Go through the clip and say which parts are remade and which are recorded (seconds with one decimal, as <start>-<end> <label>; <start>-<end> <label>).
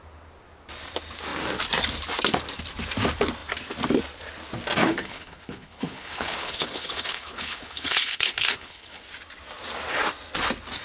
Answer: 0.0-4.8 recorded; 4.8-9.0 remade; 9.0-10.8 recorded